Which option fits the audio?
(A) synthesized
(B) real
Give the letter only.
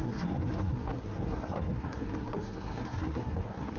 A